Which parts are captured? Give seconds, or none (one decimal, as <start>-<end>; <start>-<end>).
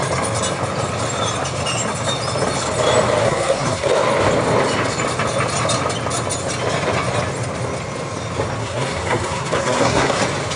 0.0-3.2; 3.9-8.6; 10.2-10.6